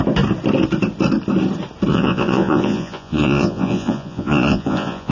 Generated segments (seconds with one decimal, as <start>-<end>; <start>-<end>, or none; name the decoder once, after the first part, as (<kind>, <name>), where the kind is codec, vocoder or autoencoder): 1.9-5.1 (vocoder, Vocos)